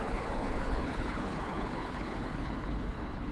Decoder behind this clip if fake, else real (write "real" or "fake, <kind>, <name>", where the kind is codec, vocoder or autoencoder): fake, codec, HILCodec